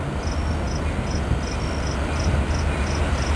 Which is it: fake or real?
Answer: real